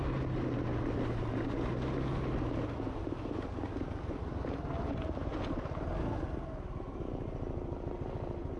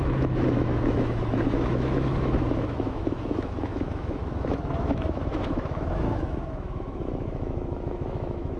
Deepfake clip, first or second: second